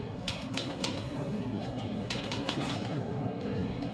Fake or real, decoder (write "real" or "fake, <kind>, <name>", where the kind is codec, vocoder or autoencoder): fake, codec, SNAC